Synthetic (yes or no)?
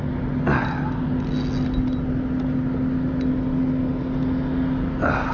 no